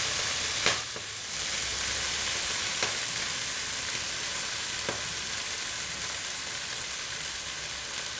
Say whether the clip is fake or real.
real